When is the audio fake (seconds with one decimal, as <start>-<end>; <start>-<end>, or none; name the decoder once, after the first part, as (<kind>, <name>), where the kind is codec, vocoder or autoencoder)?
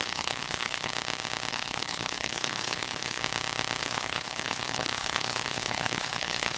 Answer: 0.0-0.9 (codec, HILCodec); 1.5-3.2; 3.8-6.6